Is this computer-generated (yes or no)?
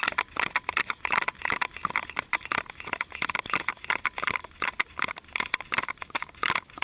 no